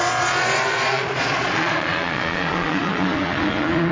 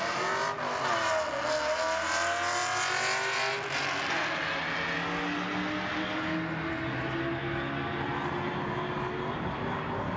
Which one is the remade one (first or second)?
first